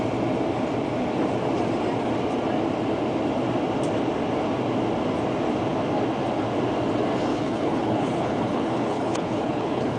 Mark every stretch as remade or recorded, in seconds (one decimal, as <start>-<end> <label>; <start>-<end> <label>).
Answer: 0.0-7.3 recorded; 7.3-10.0 remade